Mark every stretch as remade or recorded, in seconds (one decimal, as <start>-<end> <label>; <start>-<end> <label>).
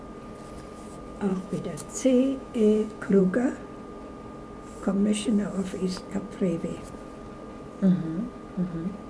0.0-1.3 recorded; 1.3-3.2 remade; 3.2-9.1 recorded